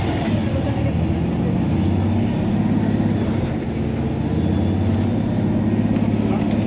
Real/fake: real